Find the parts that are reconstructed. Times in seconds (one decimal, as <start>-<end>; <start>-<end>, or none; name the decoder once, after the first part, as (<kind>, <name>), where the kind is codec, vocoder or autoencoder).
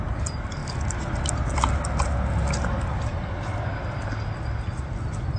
none